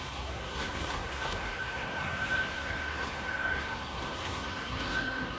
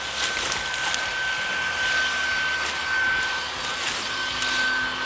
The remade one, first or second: first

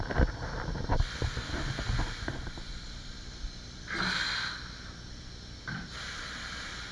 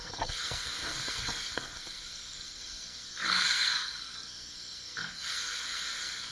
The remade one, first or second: second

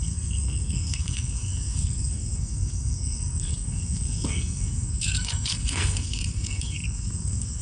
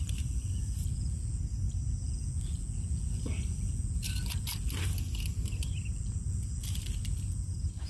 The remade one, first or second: first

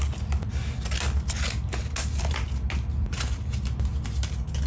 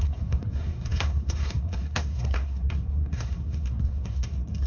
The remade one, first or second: second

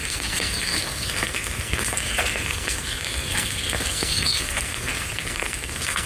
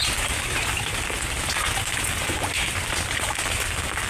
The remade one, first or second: first